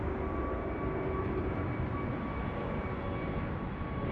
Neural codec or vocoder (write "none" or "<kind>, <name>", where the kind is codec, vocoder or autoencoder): none